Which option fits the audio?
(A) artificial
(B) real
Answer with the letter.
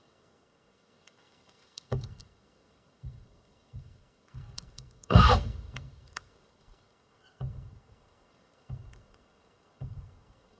A